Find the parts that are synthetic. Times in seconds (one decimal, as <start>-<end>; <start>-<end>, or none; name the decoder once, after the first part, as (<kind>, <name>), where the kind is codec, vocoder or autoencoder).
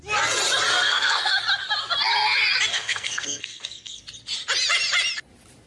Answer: 0.7-1.4 (codec, SNAC); 2.7-4.0